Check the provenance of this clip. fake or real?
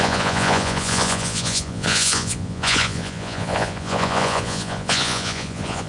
fake